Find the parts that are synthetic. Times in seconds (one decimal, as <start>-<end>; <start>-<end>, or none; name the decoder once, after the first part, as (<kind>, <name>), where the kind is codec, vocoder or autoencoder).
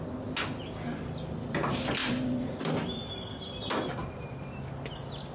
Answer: 2.0-2.7 (vocoder, BigVGAN v2); 4.0-4.6